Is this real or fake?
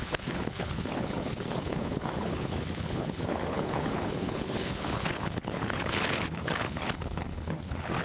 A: fake